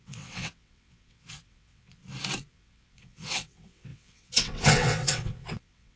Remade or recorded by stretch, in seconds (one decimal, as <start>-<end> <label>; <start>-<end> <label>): 0.0-2.0 remade; 2.0-2.5 recorded; 2.5-6.0 remade